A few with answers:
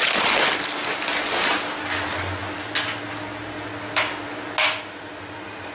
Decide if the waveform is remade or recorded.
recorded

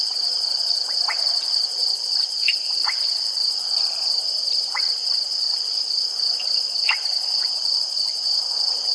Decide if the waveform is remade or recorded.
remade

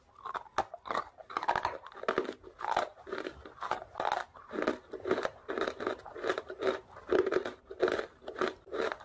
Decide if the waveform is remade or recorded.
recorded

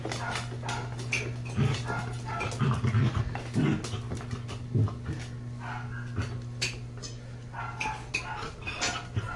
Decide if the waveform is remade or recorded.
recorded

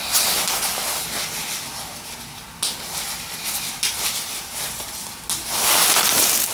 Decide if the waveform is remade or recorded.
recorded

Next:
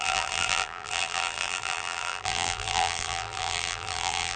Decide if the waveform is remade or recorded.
remade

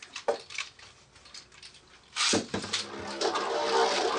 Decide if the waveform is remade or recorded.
recorded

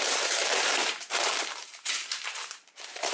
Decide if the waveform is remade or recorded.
remade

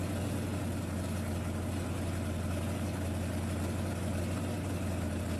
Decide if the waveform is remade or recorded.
recorded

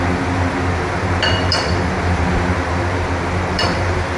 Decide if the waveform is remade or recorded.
remade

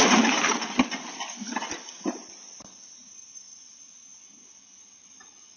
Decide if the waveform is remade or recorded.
recorded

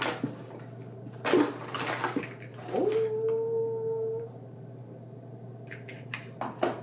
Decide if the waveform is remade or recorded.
recorded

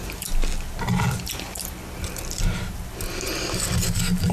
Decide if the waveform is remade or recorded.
recorded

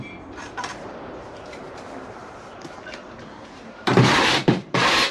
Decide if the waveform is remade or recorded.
remade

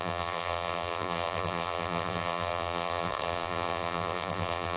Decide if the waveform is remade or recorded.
remade